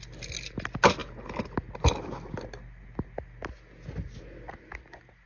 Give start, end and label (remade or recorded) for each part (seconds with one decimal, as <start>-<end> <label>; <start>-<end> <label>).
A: 0.0-5.3 recorded